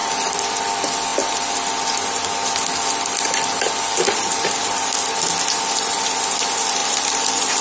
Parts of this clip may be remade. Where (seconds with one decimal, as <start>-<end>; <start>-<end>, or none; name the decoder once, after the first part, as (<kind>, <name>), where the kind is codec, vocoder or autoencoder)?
0.0-0.7 (vocoder, BigVGAN v2); 6.8-7.6